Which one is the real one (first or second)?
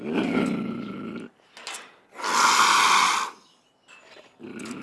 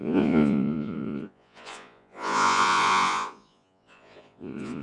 first